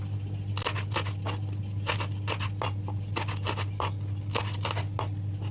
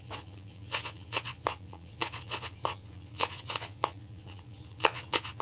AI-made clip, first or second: second